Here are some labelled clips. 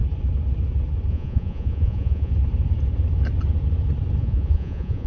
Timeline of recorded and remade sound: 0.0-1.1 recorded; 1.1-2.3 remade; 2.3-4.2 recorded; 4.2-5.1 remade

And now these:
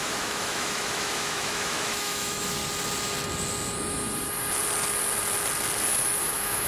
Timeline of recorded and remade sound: 0.0-2.6 remade; 2.6-6.2 recorded; 6.2-6.7 remade

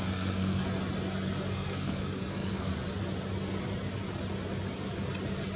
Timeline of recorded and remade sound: 0.0-0.6 remade; 0.6-1.4 recorded; 1.4-2.7 remade; 2.7-5.6 recorded

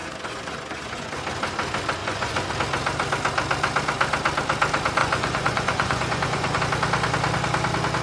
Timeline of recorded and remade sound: 0.0-1.2 remade; 1.2-2.0 recorded; 2.0-2.5 remade; 2.5-5.0 recorded; 5.0-6.6 remade; 6.6-8.0 recorded

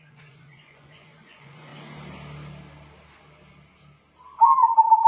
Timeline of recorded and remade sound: 0.0-1.7 remade; 1.7-5.1 recorded

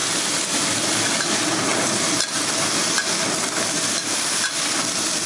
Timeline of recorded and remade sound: 0.0-1.7 remade; 1.7-2.8 recorded; 2.8-5.3 remade

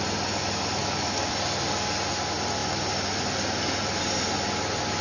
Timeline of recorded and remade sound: 0.0-5.0 recorded